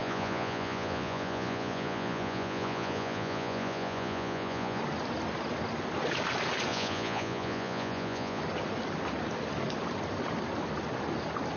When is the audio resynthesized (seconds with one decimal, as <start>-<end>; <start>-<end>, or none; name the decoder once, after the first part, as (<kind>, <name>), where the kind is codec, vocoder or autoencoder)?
0.0-4.8 (vocoder, Vocos); 6.7-8.4